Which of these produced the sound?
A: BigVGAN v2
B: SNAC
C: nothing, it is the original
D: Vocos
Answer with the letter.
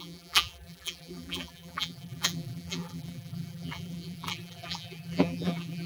A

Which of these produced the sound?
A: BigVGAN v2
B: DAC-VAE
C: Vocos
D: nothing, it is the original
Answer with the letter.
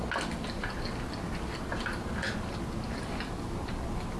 D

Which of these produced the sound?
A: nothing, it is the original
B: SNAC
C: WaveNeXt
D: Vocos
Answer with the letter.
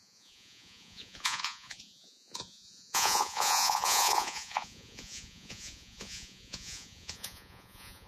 D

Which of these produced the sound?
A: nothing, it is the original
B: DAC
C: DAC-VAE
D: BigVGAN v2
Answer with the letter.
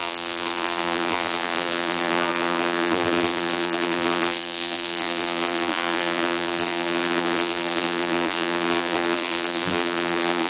D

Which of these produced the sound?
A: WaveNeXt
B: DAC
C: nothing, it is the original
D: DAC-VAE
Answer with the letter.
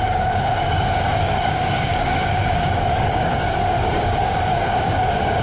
B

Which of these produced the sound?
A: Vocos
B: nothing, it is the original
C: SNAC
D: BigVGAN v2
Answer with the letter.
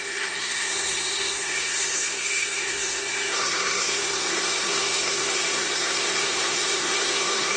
C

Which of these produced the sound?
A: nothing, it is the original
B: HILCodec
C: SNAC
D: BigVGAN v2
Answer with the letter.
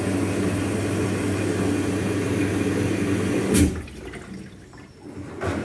A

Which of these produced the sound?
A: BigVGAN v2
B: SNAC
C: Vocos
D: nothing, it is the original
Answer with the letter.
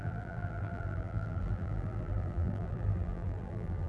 A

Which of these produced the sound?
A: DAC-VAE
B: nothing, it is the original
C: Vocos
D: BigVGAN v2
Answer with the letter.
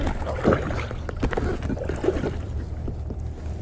B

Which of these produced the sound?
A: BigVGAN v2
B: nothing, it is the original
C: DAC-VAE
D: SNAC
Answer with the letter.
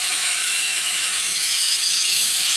C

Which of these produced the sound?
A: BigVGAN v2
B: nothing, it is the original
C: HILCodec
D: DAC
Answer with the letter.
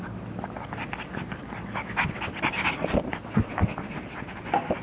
B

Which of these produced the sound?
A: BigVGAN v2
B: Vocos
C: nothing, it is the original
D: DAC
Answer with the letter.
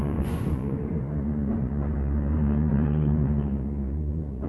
B